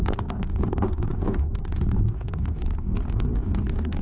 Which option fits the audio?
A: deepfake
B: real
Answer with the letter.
A